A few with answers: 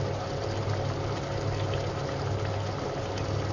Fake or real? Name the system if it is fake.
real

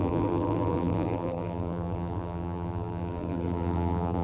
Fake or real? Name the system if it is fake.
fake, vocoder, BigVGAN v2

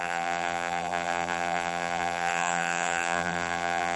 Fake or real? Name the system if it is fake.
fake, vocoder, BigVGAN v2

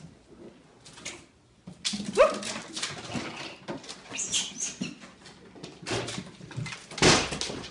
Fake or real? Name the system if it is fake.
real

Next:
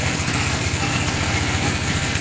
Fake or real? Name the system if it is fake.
fake, codec, SNAC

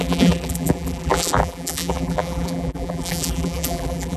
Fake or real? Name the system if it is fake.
fake, vocoder, BigVGAN v2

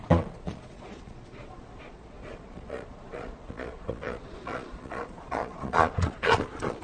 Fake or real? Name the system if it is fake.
fake, vocoder, Vocos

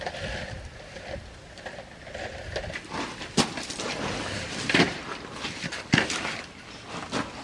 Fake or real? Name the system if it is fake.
real